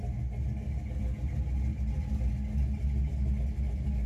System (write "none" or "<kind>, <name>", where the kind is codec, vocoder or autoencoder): none